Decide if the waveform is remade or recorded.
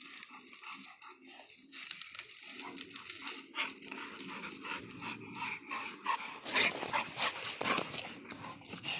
recorded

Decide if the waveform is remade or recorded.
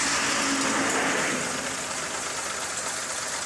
recorded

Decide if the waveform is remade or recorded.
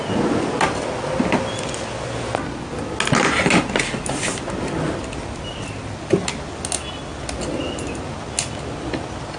recorded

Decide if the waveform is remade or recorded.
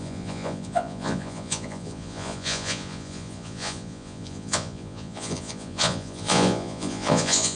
remade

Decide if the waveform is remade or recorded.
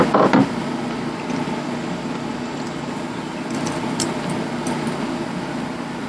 recorded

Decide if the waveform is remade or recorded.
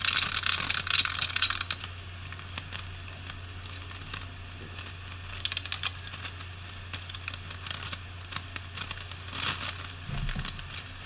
recorded